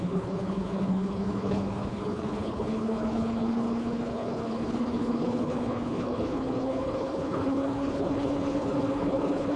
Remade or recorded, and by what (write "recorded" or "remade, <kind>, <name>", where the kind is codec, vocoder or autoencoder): remade, codec, HILCodec